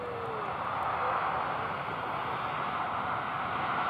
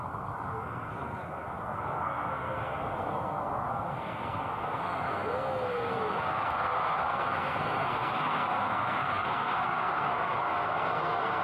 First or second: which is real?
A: first